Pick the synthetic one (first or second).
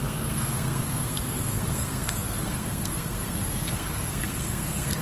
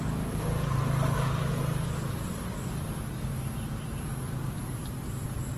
first